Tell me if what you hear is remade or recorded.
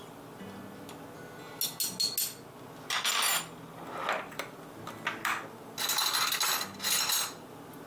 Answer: recorded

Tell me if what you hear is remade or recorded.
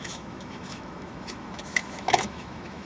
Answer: remade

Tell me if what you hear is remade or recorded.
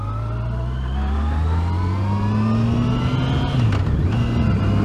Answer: recorded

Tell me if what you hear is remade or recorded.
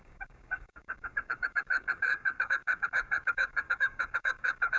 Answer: remade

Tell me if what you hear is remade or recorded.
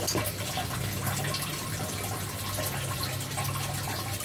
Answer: recorded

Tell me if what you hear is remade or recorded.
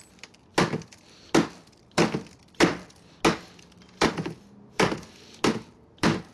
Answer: recorded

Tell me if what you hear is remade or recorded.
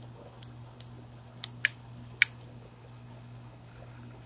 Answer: recorded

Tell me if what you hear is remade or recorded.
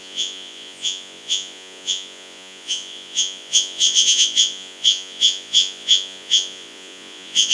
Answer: remade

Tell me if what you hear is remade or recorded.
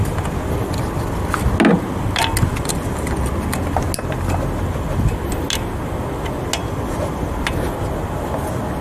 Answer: recorded